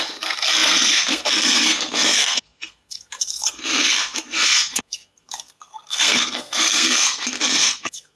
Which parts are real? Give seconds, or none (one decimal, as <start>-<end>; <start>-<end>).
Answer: none